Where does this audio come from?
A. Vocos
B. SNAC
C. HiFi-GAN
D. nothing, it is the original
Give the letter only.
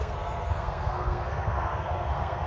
B